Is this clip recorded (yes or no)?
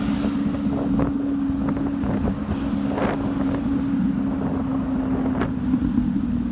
yes